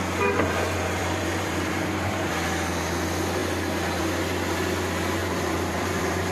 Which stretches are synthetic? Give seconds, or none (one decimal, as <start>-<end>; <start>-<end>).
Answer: 1.0-2.3; 5.2-6.3